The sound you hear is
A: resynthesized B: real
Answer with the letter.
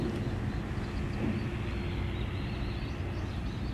B